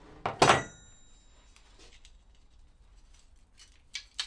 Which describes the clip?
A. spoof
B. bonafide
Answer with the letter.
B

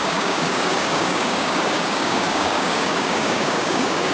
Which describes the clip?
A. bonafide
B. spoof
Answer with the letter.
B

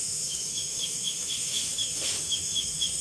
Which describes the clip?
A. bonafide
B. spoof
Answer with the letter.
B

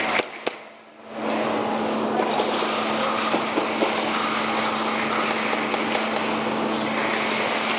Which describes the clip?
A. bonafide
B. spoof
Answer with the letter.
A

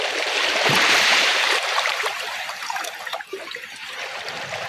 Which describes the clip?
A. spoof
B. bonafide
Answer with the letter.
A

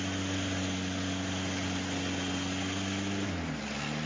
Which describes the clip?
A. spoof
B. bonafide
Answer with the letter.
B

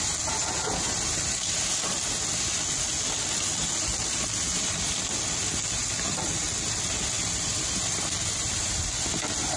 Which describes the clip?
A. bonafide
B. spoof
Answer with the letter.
A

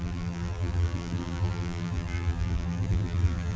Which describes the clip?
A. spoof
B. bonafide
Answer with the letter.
A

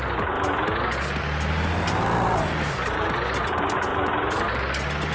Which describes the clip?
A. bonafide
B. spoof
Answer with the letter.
A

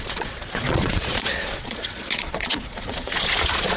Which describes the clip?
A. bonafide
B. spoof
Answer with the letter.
B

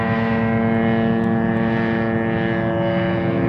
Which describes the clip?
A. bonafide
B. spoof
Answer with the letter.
A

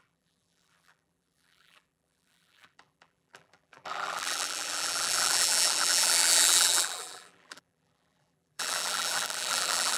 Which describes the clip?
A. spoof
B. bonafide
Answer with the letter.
A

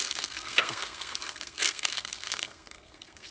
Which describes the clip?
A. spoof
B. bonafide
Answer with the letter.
A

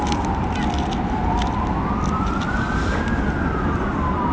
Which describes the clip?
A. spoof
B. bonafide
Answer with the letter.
B